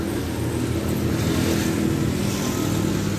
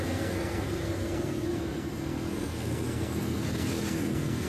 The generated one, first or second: second